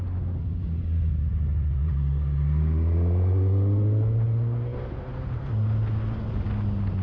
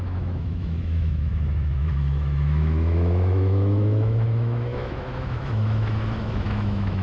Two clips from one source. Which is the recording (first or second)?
first